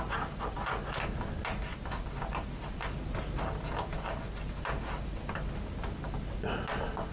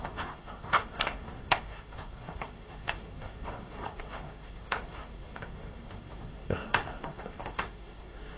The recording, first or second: first